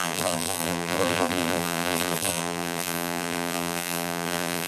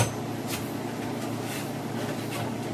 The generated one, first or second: first